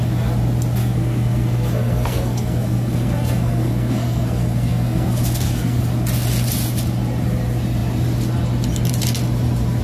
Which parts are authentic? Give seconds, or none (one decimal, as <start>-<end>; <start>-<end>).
0.0-0.8; 5.8-9.8